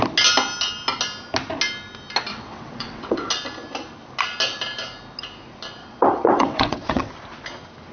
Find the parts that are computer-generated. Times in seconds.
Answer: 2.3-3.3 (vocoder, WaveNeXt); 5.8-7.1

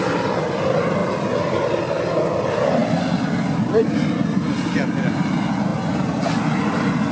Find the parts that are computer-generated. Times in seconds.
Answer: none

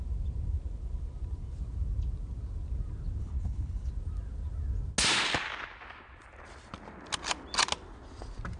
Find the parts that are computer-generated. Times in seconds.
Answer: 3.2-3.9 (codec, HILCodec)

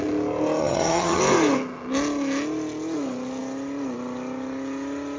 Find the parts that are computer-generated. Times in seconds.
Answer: 0.6-1.2 (vocoder, HiFi-GAN)

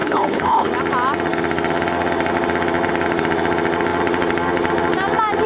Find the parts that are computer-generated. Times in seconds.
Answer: 0.0-0.7 (codec, HILCodec)

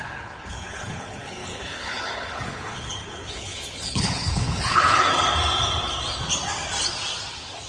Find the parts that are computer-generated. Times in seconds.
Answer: 0.0-5.1 (codec, HILCodec); 7.3-7.7